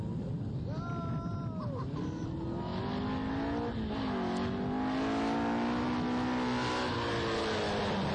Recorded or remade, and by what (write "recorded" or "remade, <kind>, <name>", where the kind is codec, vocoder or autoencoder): recorded